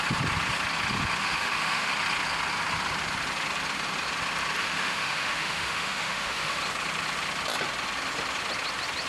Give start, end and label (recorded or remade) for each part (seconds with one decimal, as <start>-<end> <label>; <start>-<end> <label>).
0.0-1.2 recorded; 1.2-1.9 remade; 1.9-4.6 recorded; 4.6-6.6 remade; 6.6-9.1 recorded